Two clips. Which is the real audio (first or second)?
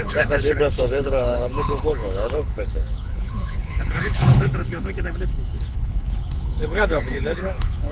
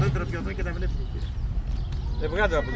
second